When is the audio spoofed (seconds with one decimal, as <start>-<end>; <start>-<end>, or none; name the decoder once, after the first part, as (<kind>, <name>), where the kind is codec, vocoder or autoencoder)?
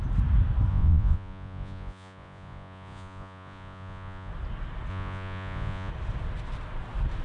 0.7-4.3 (vocoder, Vocos); 4.9-5.9